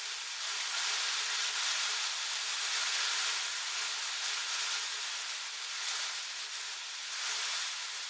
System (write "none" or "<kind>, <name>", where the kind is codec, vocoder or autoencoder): none